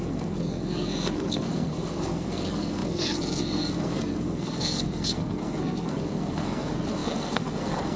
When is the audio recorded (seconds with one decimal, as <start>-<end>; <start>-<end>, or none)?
none